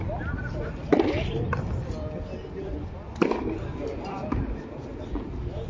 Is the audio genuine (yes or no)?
yes